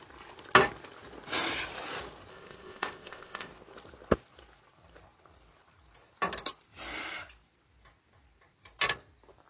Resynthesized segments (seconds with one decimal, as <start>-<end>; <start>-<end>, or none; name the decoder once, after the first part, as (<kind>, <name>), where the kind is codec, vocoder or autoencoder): 2.3-3.5 (codec, ZipCodec)